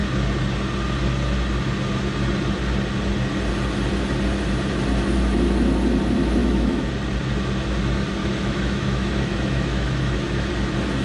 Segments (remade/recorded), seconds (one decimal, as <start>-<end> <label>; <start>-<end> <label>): 0.0-6.4 recorded; 6.4-6.9 remade; 6.9-8.2 recorded; 8.2-10.5 remade; 10.5-11.0 recorded